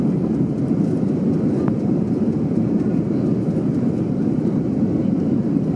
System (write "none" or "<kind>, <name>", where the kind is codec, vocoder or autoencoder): vocoder, BigVGAN v2